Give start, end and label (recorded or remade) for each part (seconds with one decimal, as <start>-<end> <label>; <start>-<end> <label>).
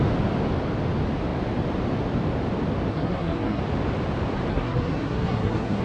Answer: 0.0-2.9 recorded; 2.9-3.6 remade; 3.6-4.5 recorded; 4.5-5.8 remade